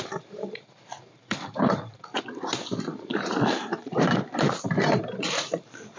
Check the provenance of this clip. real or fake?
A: fake